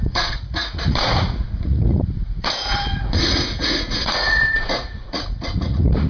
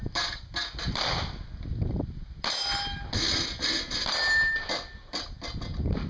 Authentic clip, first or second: second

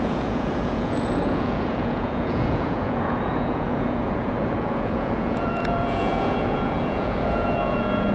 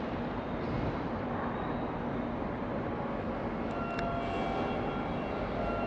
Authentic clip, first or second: second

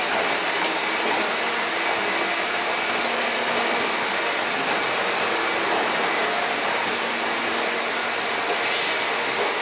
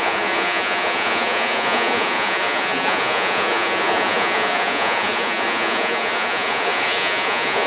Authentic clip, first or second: first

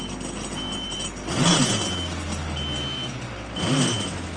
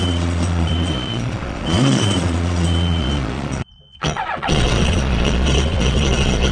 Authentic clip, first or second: first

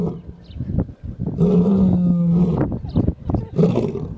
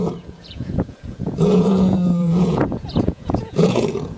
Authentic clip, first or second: first